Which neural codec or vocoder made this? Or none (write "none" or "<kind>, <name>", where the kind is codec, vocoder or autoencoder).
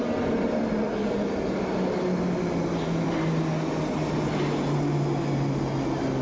none